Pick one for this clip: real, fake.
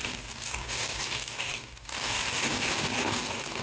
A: fake